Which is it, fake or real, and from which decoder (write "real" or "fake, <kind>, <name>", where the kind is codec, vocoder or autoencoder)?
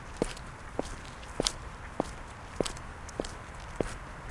fake, vocoder, BigVGAN v2